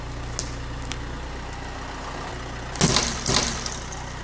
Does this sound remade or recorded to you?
recorded